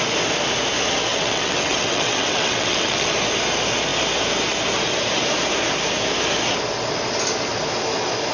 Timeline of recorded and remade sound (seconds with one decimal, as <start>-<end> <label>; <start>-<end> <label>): 0.0-1.1 recorded; 1.1-3.1 remade; 3.1-8.3 recorded